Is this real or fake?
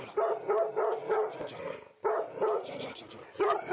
real